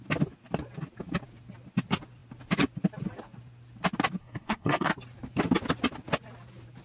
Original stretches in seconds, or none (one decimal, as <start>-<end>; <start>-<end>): 0.0-4.2; 4.9-6.8